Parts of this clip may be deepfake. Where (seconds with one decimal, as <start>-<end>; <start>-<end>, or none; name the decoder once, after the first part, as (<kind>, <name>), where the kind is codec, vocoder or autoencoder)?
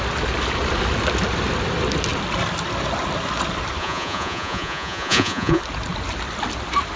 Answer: 3.8-5.6 (vocoder, Vocos)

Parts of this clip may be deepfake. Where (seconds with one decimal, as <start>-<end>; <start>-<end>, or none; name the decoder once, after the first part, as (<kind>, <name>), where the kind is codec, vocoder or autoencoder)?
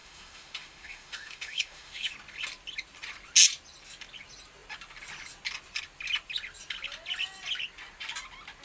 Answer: 0.0-2.1 (autoencoder, DAC-VAE)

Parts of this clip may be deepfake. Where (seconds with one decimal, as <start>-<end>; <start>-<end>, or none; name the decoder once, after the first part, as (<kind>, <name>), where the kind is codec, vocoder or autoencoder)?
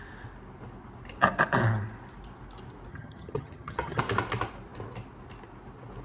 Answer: 2.9-4.0 (vocoder, HiFi-GAN)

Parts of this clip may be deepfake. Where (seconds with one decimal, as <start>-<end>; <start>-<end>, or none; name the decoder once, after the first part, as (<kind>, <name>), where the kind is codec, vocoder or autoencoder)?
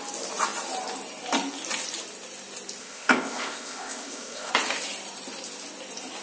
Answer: 2.8-4.5 (codec, ZipCodec)